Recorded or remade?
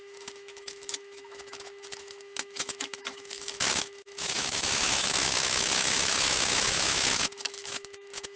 remade